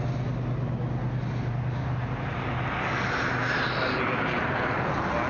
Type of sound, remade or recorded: recorded